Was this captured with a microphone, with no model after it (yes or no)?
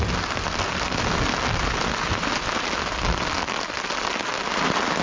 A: yes